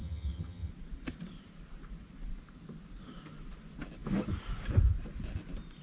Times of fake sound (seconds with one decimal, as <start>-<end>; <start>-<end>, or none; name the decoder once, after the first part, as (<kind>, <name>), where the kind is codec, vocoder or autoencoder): 0.0-0.7 (vocoder, HiFi-GAN)